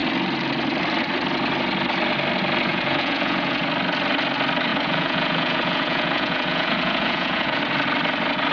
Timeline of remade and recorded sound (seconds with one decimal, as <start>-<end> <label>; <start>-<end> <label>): 0.0-2.7 recorded; 2.7-3.6 remade; 3.6-4.7 recorded; 4.7-7.6 remade; 7.6-8.5 recorded